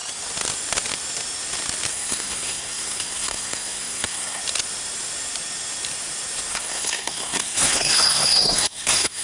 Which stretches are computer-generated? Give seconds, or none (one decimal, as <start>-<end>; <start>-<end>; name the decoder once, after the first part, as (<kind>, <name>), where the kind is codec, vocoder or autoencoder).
1.9-4.4 (codec, SNAC); 6.5-9.2